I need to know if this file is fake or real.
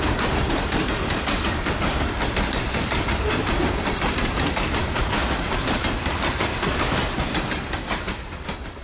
fake